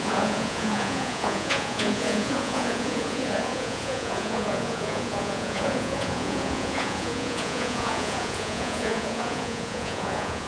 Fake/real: fake